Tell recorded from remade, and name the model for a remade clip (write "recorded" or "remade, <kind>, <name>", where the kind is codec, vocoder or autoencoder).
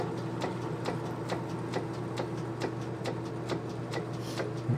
recorded